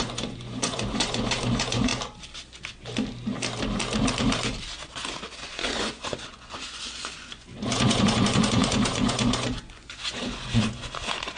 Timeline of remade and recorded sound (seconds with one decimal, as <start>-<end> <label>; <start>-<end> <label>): 0.0-1.9 remade; 1.9-5.4 recorded; 5.4-11.4 remade